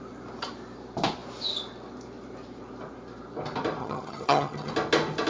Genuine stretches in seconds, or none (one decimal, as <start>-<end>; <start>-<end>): 0.0-3.8; 4.7-5.3

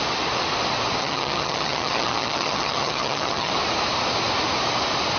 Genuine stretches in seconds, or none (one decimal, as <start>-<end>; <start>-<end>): 0.0-1.0; 3.5-5.2